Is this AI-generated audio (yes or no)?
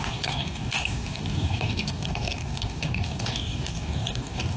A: yes